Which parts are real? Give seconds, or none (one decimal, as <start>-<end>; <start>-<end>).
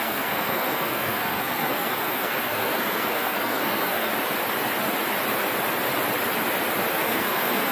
4.1-6.9